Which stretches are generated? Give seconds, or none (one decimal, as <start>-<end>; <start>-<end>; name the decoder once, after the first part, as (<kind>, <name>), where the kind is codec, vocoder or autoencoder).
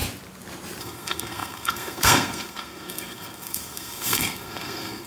0.8-5.1 (codec, SNAC)